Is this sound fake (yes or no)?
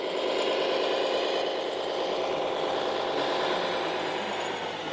no